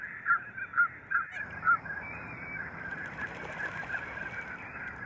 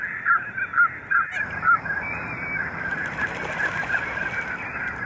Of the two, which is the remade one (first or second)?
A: first